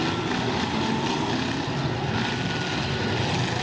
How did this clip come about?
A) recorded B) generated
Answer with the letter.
A